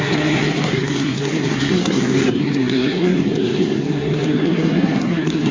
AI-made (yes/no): yes